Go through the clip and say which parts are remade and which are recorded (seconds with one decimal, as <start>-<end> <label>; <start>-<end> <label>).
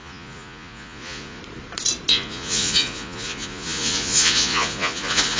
0.0-1.4 remade; 1.4-2.1 recorded; 2.1-5.4 remade